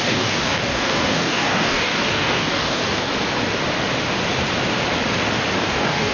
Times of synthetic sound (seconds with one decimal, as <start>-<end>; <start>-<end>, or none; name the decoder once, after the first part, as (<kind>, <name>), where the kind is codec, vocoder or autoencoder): 0.0-3.1 (codec, DAC); 5.6-6.1